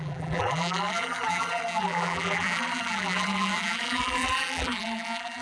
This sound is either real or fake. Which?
fake